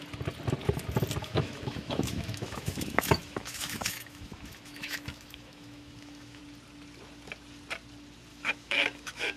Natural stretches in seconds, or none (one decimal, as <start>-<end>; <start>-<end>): 0.0-1.2; 6.4-8.3

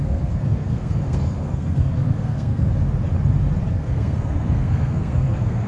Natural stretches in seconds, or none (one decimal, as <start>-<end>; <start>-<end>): 2.7-3.7

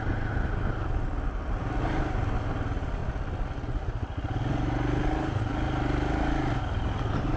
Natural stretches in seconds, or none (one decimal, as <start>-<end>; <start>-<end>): 0.0-7.4

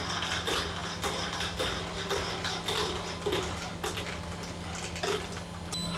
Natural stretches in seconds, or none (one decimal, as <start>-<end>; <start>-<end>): 0.0-6.0

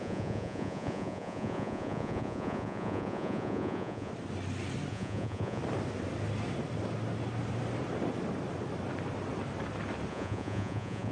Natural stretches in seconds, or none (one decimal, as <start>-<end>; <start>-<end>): 4.1-4.9; 5.6-10.1

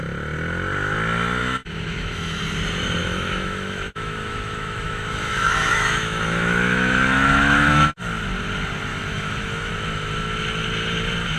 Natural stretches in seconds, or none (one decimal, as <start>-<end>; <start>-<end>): 0.0-1.4; 2.4-3.0; 8.0-8.9; 9.7-11.4

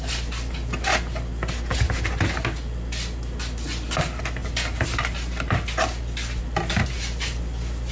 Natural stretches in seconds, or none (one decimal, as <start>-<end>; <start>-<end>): 0.0-7.9

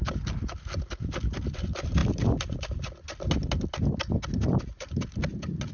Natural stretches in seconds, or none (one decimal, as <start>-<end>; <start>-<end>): 0.0-5.7